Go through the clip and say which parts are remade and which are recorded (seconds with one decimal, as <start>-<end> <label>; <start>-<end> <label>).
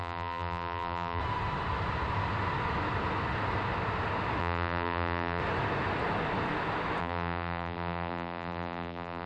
0.0-1.2 remade; 1.2-4.4 recorded; 4.4-5.4 remade; 5.4-7.0 recorded; 7.0-9.3 remade